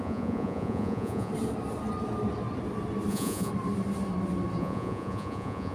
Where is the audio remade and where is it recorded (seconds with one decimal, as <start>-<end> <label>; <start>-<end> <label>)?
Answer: 0.0-1.3 remade; 1.3-3.1 recorded; 3.1-3.5 remade; 3.5-4.6 recorded; 4.6-5.7 remade